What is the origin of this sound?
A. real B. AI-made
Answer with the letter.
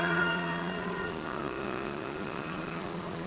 B